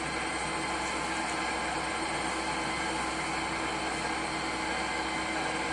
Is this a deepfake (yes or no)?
no